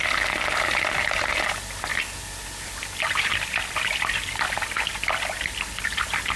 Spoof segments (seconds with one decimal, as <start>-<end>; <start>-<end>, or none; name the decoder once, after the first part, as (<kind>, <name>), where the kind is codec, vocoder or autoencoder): 1.9-5.4 (vocoder, BigVGAN v2)